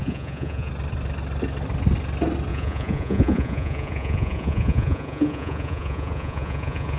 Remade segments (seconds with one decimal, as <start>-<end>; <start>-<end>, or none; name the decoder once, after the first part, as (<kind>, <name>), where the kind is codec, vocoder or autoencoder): 0.0-0.7 (vocoder, Vocos); 2.5-7.0